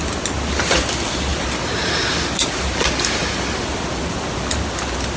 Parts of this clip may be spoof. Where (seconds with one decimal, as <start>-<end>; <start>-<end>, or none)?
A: none